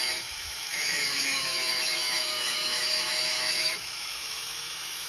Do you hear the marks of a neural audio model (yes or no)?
yes